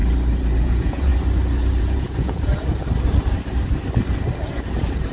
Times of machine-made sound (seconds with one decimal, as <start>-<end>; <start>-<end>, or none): 0.6-1.1; 1.8-2.5